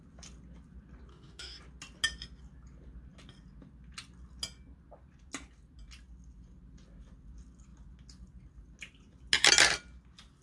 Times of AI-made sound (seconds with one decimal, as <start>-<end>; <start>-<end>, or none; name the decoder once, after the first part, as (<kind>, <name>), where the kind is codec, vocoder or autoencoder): 1.1-1.6 (autoencoder, DAC-VAE)